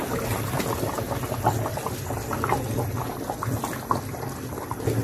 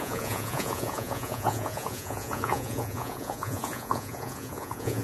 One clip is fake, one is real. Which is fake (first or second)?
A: second